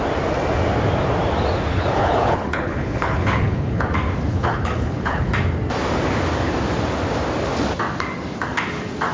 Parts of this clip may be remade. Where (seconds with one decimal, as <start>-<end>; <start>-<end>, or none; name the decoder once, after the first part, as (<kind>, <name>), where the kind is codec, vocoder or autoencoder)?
1.7-3.8 (codec, HILCodec); 4.3-5.3